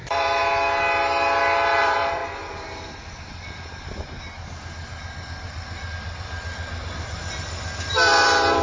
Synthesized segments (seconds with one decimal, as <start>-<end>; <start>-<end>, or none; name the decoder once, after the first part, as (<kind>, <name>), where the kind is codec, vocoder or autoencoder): 0.0-0.4 (vocoder, BigVGAN v2); 1.8-2.2; 5.9-8.6